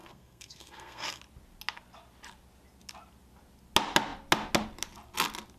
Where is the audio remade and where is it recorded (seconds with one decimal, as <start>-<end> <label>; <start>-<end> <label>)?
0.0-1.2 remade; 1.2-5.6 recorded